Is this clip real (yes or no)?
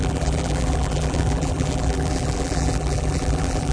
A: no